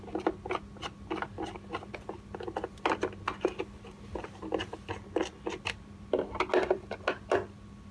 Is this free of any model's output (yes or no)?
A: yes